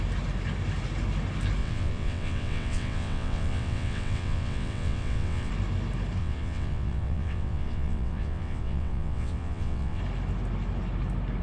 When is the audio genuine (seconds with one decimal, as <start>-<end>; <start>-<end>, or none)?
0.0-1.6; 5.5-6.2; 10.0-11.4